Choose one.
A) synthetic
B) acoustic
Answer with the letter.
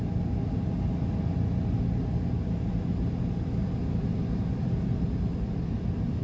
B